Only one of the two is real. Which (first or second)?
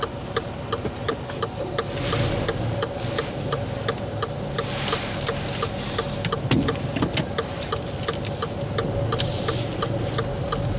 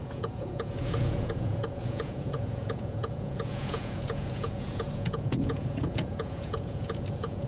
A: first